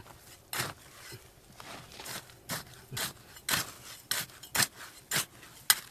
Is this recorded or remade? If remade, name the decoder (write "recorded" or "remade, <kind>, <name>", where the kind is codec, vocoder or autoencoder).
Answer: recorded